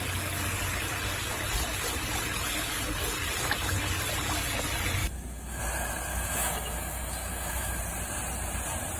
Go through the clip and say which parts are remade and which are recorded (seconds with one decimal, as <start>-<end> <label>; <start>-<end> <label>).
0.0-5.0 recorded; 5.0-5.6 remade; 5.6-6.1 recorded; 6.1-7.8 remade; 7.8-9.0 recorded